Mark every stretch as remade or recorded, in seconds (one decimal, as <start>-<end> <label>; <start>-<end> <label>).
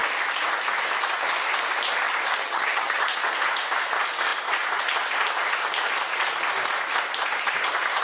0.0-2.4 recorded; 2.4-3.0 remade; 3.0-8.0 recorded